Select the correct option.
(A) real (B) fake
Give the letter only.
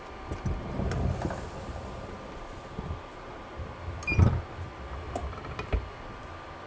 A